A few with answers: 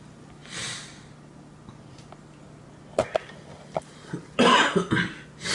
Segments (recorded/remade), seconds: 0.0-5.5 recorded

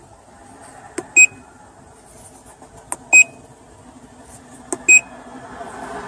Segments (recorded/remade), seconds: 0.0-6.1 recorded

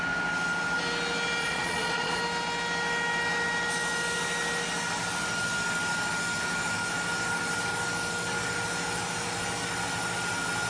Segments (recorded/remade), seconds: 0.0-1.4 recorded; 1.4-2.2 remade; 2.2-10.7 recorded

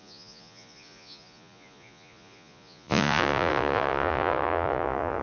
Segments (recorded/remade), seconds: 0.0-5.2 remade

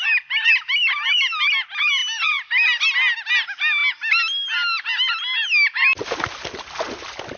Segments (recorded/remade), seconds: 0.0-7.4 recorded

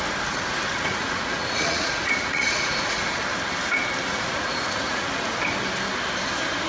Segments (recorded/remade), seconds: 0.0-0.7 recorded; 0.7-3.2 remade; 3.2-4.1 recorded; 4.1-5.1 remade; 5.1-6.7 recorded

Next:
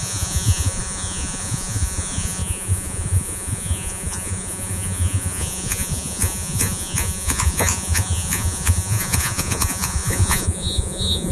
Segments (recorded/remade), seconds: 0.0-11.3 remade